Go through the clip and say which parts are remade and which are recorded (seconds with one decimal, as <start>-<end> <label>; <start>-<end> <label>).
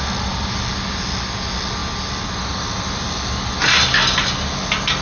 0.0-5.0 recorded